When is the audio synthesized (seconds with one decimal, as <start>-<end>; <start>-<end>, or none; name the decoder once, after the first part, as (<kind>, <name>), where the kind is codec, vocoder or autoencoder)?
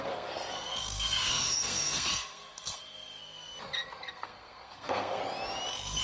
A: 0.0-3.5 (codec, SNAC); 4.1-5.2